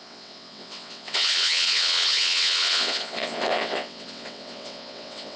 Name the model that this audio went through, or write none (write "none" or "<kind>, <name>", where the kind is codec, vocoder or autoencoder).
vocoder, WaveNeXt